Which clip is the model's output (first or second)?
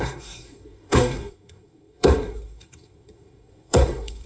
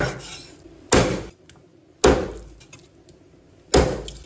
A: first